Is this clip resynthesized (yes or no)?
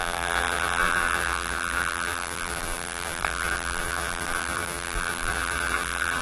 yes